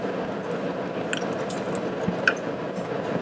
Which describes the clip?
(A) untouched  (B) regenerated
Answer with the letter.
A